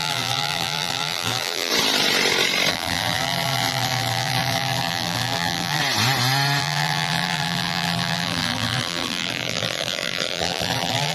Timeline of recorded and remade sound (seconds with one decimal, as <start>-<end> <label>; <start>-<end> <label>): 0.0-1.7 remade; 1.7-2.7 recorded; 2.7-5.8 remade; 5.8-6.6 recorded; 6.6-11.1 remade